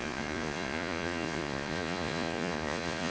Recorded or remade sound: remade